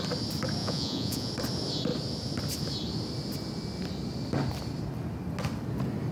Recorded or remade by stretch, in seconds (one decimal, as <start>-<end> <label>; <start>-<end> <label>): 0.0-0.6 recorded; 0.6-1.3 remade; 1.3-6.1 recorded